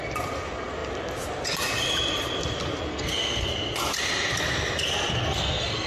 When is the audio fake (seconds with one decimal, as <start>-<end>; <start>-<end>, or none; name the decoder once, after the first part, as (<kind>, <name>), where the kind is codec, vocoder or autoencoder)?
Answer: 2.9-3.5 (codec, SNAC); 5.1-5.9